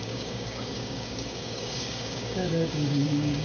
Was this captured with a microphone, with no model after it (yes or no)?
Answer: no